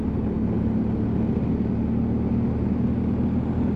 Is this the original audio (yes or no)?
yes